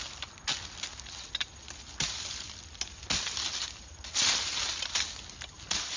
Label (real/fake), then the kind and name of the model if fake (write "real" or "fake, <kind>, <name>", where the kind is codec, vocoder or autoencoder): real